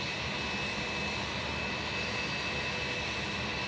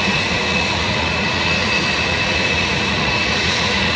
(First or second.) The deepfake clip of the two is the second